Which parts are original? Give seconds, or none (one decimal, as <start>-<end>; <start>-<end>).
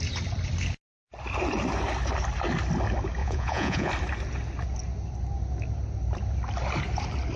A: 0.0-3.2; 3.9-7.4